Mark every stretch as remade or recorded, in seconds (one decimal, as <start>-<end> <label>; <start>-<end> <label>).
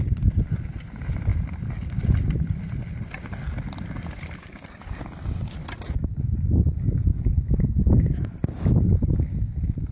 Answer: 0.0-9.9 recorded